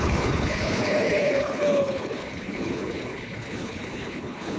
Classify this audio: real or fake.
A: fake